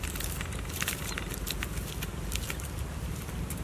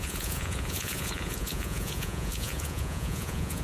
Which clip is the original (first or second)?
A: first